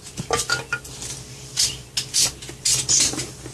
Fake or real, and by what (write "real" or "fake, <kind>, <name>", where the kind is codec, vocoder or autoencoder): real